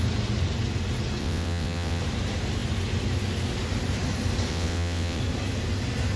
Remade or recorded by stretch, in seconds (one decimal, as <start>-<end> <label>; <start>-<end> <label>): 0.0-1.2 recorded; 1.2-2.0 remade; 2.0-4.5 recorded; 4.5-5.2 remade; 5.2-6.2 recorded